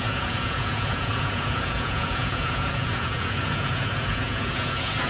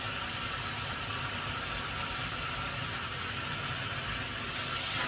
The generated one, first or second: first